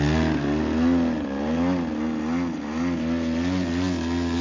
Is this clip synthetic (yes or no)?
no